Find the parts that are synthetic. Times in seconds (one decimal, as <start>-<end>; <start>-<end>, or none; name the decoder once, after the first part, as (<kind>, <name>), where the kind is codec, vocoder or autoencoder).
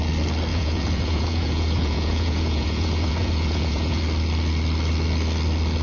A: 0.5-4.0 (vocoder, Vocos)